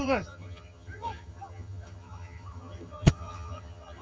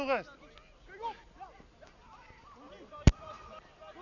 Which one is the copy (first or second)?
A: first